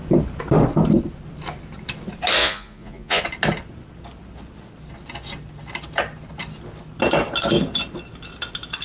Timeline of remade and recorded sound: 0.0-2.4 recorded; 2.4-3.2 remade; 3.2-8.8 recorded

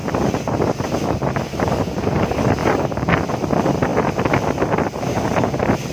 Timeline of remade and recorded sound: 0.0-2.6 recorded; 2.6-3.1 remade; 3.1-5.9 recorded

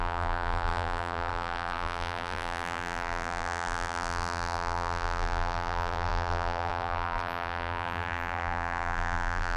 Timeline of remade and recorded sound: 0.0-9.6 remade

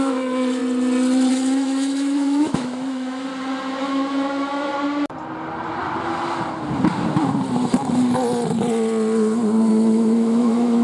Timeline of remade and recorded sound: 0.0-0.6 remade; 0.6-1.3 recorded; 1.3-3.3 remade; 3.3-3.8 recorded; 3.8-4.7 remade; 4.7-9.7 recorded; 9.7-10.8 remade

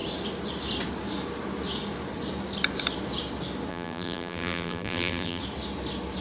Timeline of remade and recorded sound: 0.0-3.7 recorded; 3.7-5.4 remade; 5.4-6.2 recorded